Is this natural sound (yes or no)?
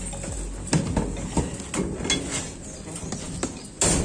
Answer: yes